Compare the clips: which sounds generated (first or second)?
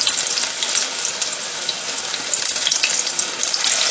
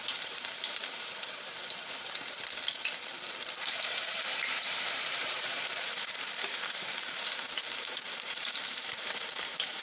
second